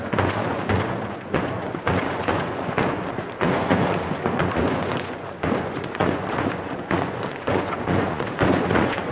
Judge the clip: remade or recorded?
remade